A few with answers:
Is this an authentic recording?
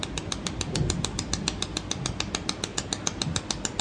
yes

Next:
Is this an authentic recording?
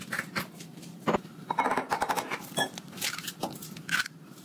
no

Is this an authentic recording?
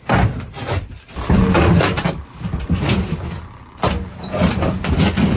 yes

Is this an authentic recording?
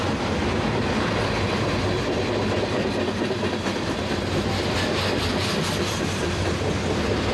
yes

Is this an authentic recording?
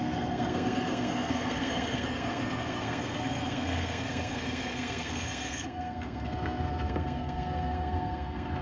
no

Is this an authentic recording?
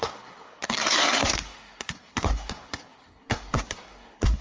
no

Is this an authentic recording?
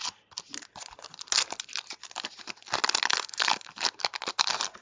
yes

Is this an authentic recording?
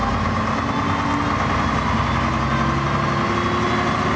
yes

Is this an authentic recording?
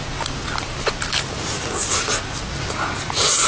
yes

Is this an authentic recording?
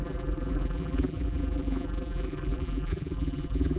no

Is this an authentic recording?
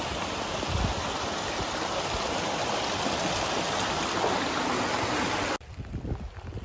yes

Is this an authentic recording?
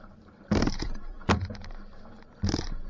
no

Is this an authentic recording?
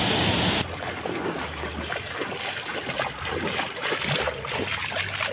yes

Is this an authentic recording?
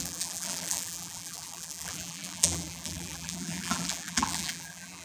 no